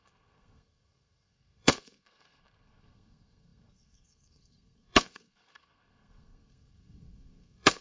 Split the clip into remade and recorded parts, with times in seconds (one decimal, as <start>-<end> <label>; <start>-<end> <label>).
0.0-7.8 remade